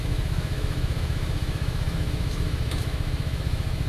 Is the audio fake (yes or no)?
yes